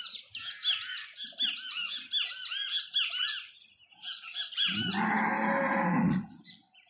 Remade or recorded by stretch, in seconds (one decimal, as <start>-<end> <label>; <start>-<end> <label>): 0.0-6.9 recorded